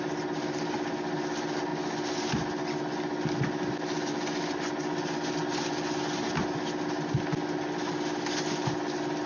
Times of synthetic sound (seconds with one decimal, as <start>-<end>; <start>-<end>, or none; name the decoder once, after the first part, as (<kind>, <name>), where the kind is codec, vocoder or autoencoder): none